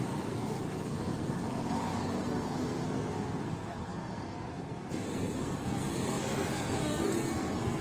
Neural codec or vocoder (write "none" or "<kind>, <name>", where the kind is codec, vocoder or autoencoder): codec, SNAC